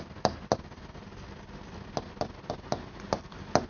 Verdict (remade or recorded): recorded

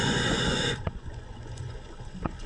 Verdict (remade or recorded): remade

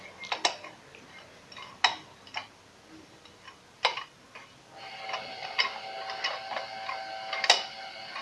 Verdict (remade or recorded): recorded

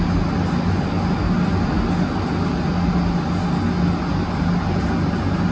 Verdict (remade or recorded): recorded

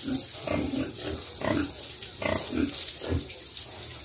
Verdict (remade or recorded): recorded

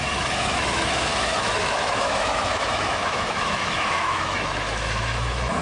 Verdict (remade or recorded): remade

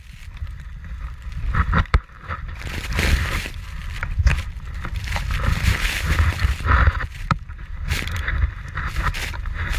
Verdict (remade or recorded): remade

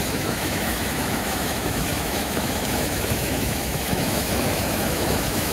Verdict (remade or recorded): remade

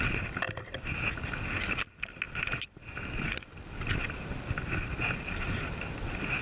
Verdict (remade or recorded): recorded